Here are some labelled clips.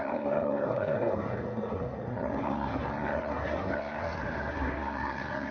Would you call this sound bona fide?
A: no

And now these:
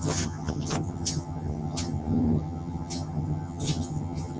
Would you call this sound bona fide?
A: no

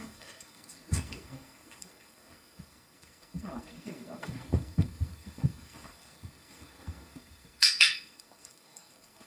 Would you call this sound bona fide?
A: no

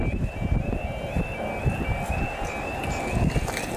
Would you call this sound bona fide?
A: yes